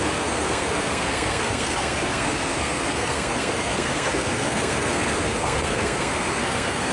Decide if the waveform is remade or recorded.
remade